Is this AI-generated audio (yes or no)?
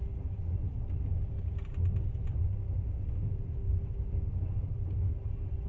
no